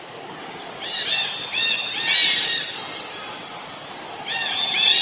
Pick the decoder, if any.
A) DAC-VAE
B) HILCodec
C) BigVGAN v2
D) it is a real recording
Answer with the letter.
D